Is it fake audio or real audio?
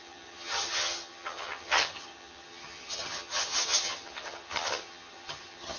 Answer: fake